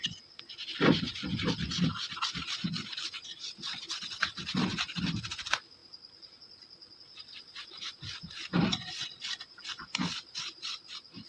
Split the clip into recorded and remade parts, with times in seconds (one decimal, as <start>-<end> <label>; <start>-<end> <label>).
0.0-11.3 recorded